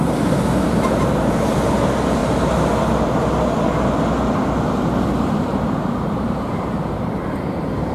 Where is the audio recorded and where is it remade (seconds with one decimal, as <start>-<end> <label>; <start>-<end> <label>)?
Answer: 0.0-2.2 remade; 2.2-4.6 recorded; 4.6-7.9 remade